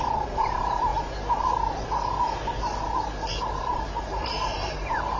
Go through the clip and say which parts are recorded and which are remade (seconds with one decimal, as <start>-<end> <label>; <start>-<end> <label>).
0.0-0.9 remade; 0.9-3.3 recorded; 3.3-5.2 remade